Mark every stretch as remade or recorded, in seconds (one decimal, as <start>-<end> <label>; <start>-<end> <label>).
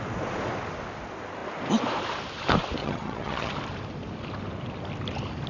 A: 0.0-2.8 recorded; 2.8-3.5 remade; 3.5-5.5 recorded